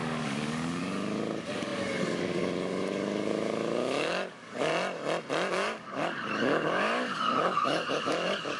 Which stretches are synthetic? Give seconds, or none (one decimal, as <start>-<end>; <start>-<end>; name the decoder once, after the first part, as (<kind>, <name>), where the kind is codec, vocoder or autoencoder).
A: 0.0-4.7 (codec, DAC); 5.5-8.6